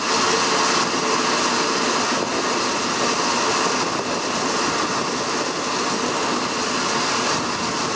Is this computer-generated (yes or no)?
no